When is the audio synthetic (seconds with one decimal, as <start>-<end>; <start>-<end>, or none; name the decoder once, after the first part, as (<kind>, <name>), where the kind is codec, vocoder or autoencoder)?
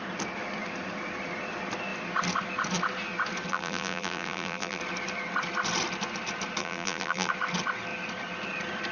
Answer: 3.5-4.8 (vocoder, BigVGAN v2); 6.6-7.3